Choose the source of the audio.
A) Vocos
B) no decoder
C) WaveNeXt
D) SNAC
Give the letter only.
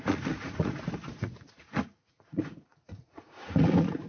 A